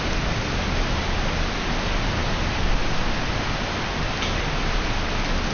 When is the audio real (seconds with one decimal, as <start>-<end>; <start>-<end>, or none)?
0.0-5.5